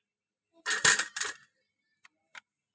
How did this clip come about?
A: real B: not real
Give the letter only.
B